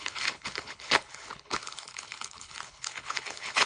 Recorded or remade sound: remade